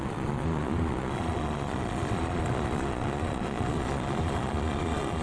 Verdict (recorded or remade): remade